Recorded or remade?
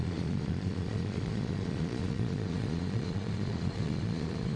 remade